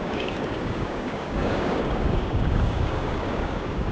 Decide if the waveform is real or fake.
fake